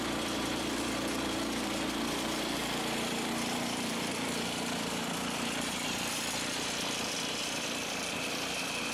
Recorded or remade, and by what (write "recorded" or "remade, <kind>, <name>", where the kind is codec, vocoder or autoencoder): remade, vocoder, BigVGAN v2